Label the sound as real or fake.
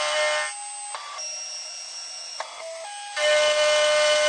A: real